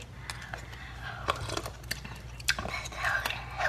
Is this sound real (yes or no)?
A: yes